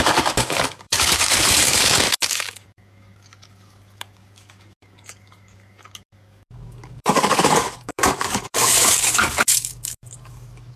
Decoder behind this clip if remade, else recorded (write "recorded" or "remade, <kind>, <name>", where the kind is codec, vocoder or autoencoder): remade, codec, DAC